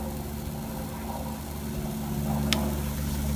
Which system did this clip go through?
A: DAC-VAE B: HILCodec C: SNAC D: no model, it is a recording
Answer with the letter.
D